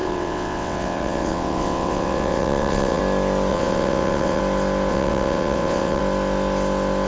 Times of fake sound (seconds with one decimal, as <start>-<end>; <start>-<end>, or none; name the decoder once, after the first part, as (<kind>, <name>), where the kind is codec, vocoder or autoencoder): 0.0-3.0 (vocoder, WaveNeXt); 3.5-4.4; 4.9-6.0